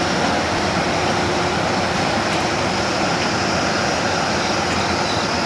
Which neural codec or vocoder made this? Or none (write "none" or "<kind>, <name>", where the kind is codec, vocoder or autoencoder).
none